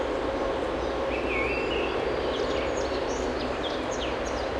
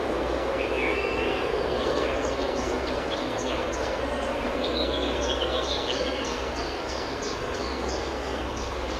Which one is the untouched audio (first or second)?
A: first